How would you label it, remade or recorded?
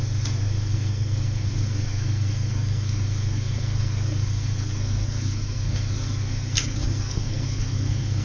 remade